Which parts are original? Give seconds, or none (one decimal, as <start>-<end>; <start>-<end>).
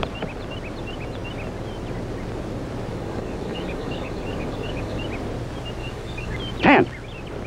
0.0-2.9; 5.0-5.8; 6.4-7.5